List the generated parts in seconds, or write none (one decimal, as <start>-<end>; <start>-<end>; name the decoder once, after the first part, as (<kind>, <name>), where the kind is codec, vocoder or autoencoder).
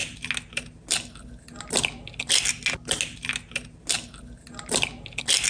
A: none